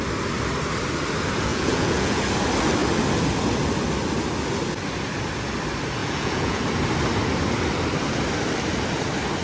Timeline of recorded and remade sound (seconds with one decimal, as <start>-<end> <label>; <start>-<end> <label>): 0.0-1.5 recorded; 1.5-2.2 remade; 2.2-6.0 recorded; 6.0-6.6 remade; 6.6-9.4 recorded